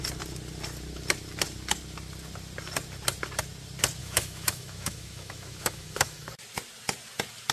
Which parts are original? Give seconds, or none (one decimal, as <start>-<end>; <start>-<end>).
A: 0.0-4.0; 6.3-7.5